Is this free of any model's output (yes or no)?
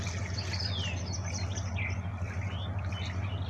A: yes